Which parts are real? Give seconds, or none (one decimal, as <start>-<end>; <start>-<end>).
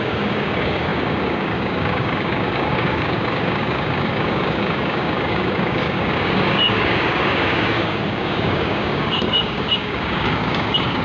none